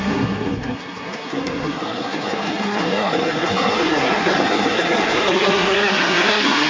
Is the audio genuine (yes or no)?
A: no